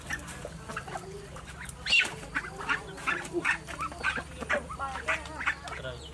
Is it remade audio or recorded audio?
recorded